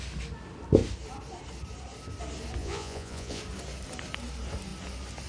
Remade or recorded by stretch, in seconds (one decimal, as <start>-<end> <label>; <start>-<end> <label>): 0.0-2.6 recorded; 2.6-3.4 remade; 3.4-5.3 recorded